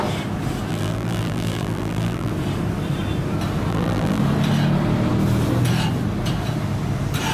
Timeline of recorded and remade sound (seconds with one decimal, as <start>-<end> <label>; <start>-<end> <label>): 0.0-0.7 recorded; 0.7-2.3 remade; 2.3-3.7 recorded; 3.7-4.2 remade; 4.2-7.3 recorded